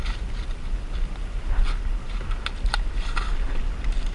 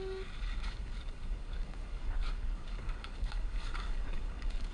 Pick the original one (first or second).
first